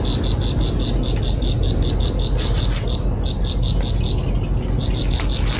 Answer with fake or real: real